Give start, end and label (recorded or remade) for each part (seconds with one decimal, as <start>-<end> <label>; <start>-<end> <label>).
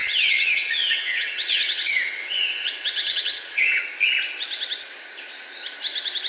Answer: 0.0-3.8 remade; 3.8-6.3 recorded